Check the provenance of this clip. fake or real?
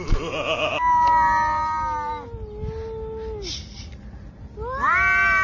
real